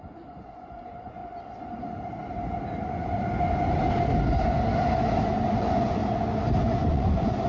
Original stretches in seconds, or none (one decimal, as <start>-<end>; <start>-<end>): 1.2-5.6; 6.0-6.6